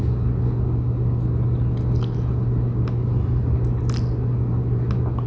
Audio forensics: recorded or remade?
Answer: recorded